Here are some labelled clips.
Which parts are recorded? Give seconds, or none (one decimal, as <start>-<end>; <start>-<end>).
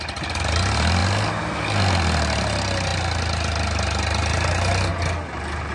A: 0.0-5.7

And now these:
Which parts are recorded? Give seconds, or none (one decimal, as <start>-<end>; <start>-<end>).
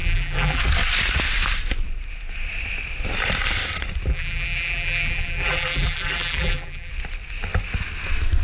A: 0.6-4.1; 6.9-8.4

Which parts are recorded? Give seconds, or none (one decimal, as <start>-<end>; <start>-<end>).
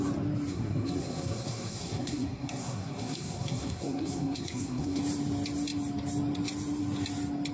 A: 0.0-0.5; 5.0-7.5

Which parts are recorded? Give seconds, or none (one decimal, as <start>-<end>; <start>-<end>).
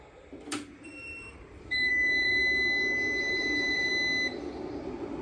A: 2.4-3.2; 3.9-4.8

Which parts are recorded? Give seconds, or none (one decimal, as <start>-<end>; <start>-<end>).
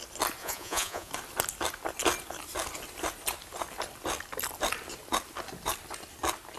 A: 0.0-0.4; 1.1-6.6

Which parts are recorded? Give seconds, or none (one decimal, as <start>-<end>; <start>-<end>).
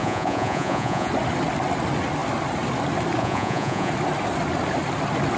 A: 1.1-3.2; 3.9-5.4